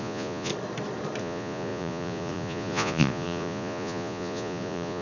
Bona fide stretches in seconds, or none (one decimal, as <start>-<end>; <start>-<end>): 0.5-1.2